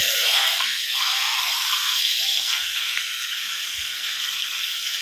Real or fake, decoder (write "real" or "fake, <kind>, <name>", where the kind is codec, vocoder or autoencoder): fake, codec, SNAC